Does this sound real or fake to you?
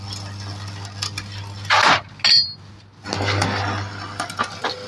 real